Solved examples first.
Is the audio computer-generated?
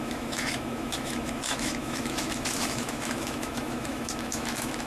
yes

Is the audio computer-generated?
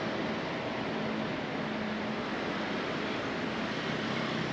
no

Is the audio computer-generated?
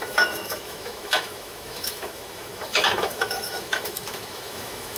yes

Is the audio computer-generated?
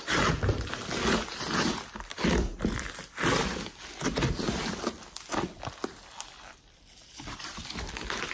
no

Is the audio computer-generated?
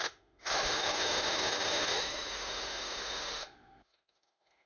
yes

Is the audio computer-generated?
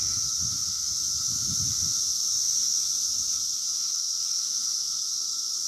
yes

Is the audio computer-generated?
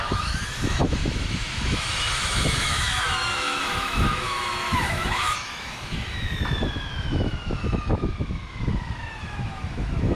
yes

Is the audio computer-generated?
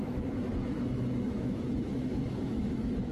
yes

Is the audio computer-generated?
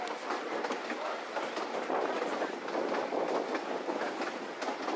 no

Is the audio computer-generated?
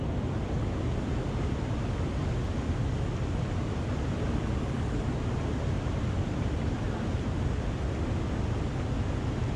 no